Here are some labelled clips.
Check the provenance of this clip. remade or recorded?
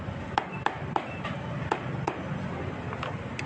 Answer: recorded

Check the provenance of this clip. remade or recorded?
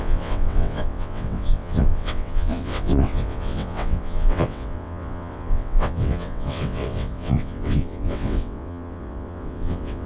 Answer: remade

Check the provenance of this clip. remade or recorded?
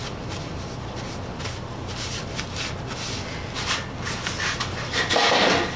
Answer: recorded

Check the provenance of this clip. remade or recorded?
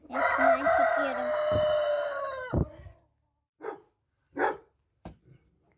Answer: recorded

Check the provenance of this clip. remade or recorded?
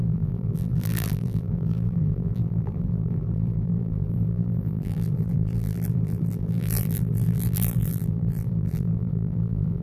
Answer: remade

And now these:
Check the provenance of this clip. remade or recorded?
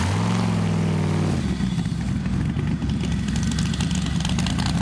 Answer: recorded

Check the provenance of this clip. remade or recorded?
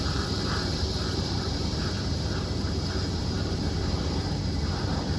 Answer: remade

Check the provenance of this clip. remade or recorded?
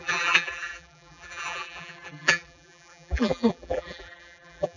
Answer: remade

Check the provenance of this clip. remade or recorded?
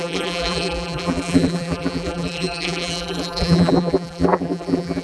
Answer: remade